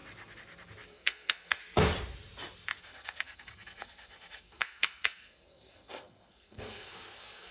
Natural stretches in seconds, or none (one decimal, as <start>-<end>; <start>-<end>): 0.0-0.9; 1.6-2.8